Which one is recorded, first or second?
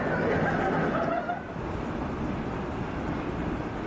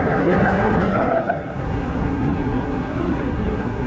first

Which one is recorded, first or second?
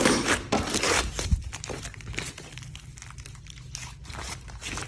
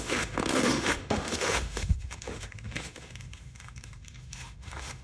first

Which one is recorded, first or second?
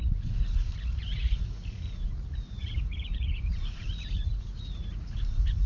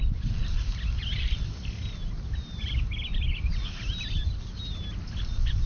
second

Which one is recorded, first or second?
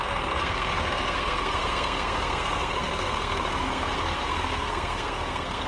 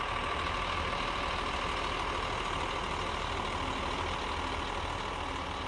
second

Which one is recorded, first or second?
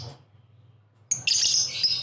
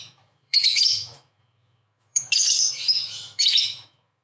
first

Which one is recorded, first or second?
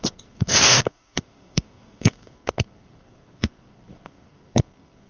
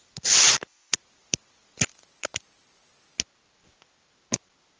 second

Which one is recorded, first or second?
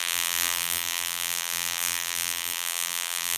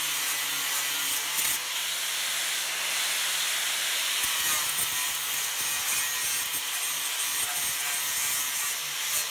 second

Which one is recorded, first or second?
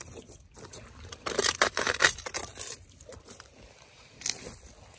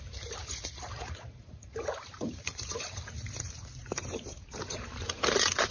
first